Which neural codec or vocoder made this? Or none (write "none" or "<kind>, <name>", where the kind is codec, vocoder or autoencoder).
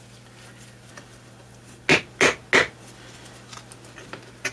none